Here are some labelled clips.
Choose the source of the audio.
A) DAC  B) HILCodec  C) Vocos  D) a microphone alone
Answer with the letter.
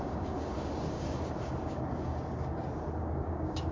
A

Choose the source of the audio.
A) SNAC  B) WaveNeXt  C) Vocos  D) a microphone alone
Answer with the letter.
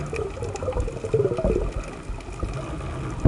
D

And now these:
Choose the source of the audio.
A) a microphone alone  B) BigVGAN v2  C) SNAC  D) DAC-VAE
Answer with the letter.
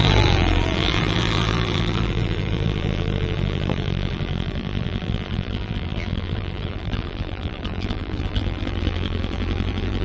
B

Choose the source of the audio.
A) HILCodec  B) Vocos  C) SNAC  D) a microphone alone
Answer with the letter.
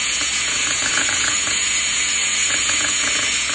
B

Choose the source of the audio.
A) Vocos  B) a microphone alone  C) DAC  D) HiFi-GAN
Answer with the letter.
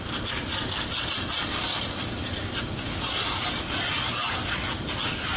B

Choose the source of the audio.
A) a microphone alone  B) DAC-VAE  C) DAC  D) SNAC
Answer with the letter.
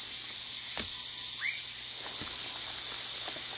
A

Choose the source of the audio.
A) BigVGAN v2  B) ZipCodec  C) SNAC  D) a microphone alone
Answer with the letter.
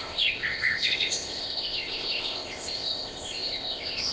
B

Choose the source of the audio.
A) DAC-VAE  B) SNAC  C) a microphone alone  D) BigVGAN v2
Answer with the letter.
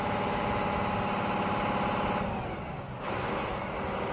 C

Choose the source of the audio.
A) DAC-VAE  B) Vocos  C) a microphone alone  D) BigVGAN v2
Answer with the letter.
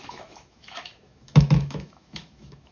A